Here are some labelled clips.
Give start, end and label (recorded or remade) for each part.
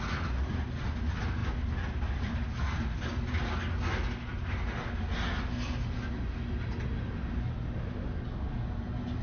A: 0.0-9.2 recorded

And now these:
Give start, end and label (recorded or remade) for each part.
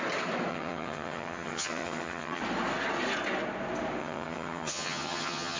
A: 0.0-0.5 recorded; 0.5-2.4 remade; 2.4-4.0 recorded; 4.0-5.6 remade